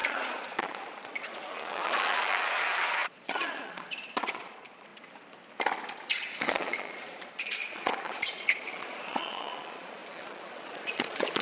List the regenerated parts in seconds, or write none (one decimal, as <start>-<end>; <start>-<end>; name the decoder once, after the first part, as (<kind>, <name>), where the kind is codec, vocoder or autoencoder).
0.0-4.9 (vocoder, Vocos); 5.9-11.4